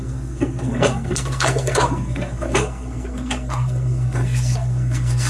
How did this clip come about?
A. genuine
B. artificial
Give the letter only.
B